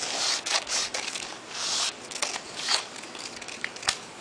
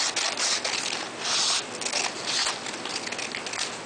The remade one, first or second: first